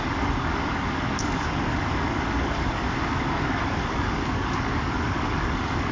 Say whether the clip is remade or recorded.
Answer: remade